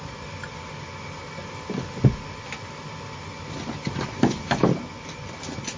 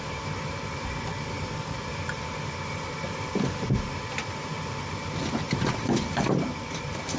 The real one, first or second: first